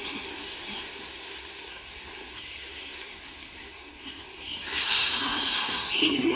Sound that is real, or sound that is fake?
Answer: fake